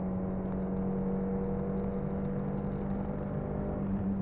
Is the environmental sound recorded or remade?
recorded